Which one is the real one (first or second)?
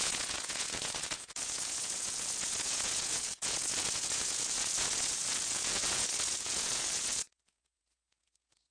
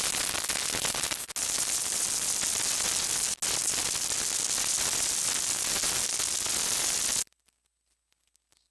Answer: second